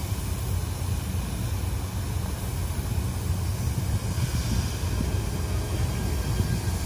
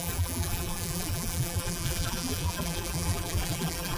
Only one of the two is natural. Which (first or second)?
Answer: first